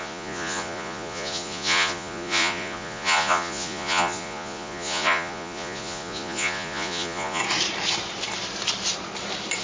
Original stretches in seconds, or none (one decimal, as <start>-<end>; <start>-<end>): 7.4-9.6